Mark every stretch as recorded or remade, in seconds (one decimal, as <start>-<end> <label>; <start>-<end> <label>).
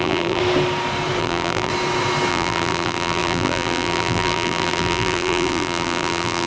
0.0-0.4 remade; 0.4-1.2 recorded; 1.2-1.7 remade; 1.7-2.3 recorded; 2.3-6.5 remade